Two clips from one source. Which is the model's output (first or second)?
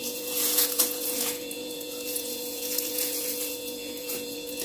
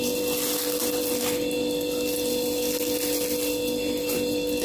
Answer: first